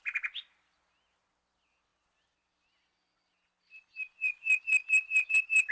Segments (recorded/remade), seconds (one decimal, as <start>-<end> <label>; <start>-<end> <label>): 0.0-5.7 recorded

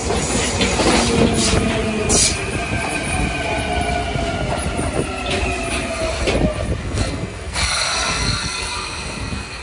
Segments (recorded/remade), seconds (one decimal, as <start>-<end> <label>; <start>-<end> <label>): 0.0-6.8 recorded; 6.8-9.6 remade

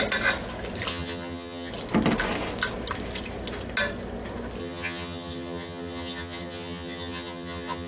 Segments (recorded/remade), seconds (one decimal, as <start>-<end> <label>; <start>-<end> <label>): 0.0-0.9 recorded; 0.9-1.7 remade; 1.7-4.6 recorded; 4.6-7.9 remade